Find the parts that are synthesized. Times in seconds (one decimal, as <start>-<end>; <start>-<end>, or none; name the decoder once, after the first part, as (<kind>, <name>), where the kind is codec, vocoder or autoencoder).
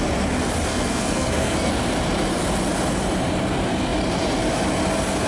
0.7-1.7 (codec, SNAC)